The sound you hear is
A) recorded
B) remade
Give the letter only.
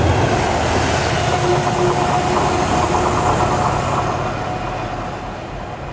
A